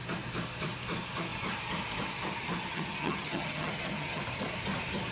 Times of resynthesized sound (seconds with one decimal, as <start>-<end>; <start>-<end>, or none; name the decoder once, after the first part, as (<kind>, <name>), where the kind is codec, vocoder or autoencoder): 2.7-4.2 (vocoder, HiFi-GAN)